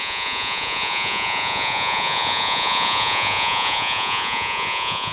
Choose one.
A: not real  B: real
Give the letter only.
A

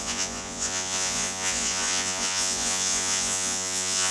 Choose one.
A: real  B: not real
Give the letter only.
B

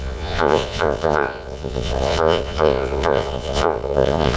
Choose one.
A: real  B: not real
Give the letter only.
B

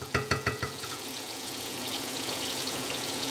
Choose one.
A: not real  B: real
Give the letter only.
A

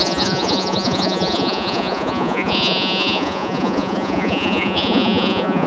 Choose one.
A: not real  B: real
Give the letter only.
A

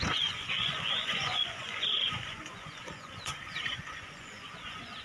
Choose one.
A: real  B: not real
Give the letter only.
B